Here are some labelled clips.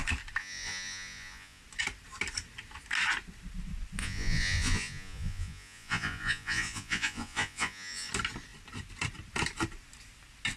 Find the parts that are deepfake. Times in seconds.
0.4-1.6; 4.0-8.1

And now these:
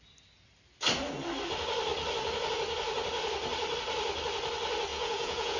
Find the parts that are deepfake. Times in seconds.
4.9-5.6

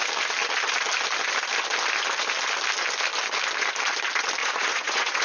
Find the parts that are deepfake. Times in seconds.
4.4-5.2

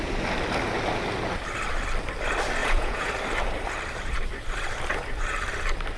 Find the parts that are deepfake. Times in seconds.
2.6-3.1